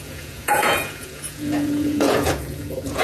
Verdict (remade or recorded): remade